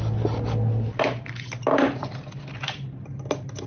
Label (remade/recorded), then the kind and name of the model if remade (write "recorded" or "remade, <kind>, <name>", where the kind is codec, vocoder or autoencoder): recorded